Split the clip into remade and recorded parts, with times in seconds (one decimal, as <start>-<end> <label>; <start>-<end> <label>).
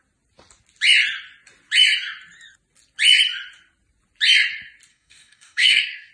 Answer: 0.0-4.9 recorded; 4.9-6.1 remade